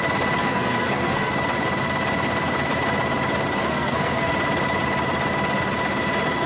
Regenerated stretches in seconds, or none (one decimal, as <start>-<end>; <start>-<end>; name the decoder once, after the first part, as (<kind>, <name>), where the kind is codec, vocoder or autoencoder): 0.4-1.3 (codec, SNAC); 3.6-4.3